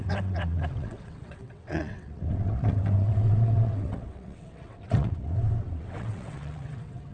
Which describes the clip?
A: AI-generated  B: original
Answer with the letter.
A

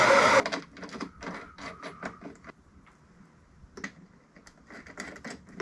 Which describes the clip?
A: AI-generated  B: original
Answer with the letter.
B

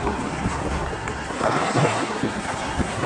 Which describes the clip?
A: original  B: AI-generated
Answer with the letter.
B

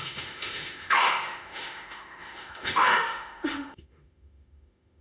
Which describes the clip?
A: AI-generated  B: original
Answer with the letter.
A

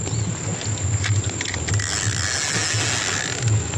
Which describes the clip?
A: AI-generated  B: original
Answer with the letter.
B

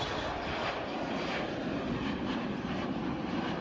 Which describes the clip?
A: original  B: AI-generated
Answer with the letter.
A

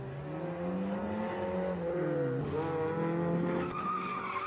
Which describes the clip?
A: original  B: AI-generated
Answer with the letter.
A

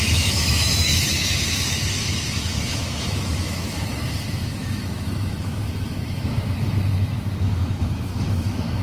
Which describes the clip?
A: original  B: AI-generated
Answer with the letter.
B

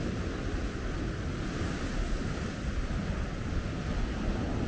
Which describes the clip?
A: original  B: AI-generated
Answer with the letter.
A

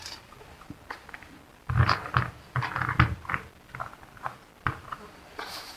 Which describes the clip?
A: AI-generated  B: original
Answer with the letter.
B